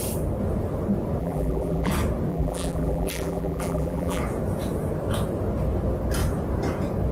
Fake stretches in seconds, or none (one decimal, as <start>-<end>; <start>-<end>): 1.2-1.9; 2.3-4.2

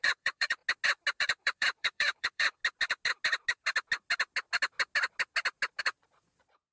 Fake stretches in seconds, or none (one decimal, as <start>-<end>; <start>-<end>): 0.0-0.6; 1.2-2.6; 5.8-6.7

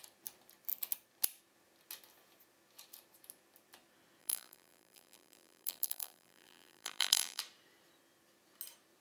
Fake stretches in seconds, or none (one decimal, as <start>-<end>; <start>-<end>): 4.2-7.4